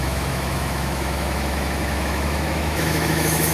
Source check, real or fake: fake